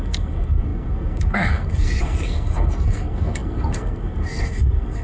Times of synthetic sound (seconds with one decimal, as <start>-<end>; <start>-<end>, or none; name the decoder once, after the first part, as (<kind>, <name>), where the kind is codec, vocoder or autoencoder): 0.0-5.0 (codec, SNAC)